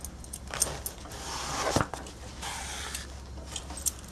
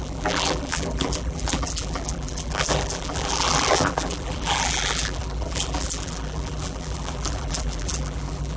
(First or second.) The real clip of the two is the first